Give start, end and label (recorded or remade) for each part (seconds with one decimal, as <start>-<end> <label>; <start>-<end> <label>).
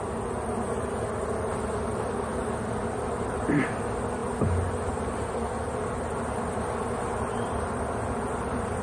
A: 0.0-8.8 recorded